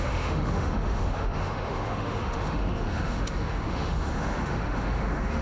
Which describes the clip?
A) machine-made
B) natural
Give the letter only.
A